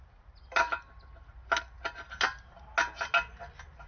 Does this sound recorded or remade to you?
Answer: recorded